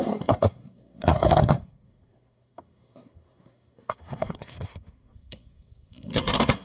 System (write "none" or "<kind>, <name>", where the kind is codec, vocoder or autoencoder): codec, SNAC